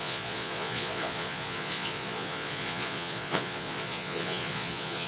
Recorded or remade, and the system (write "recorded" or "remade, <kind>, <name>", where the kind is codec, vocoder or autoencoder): remade, vocoder, Vocos